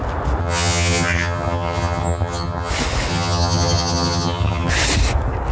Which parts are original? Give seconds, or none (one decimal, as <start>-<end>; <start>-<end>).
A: 0.0-0.4; 2.7-3.1; 4.7-5.5